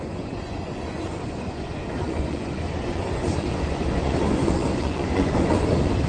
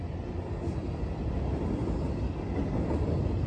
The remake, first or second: first